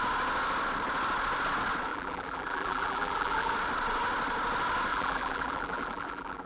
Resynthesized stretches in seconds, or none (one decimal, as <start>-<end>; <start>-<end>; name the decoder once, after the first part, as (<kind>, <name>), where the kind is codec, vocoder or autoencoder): 1.9-3.5 (vocoder, BigVGAN v2); 4.9-6.5